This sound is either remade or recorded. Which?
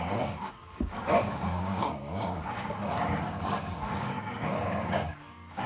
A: remade